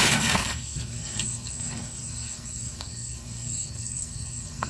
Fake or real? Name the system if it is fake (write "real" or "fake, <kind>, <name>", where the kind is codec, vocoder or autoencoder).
fake, codec, SNAC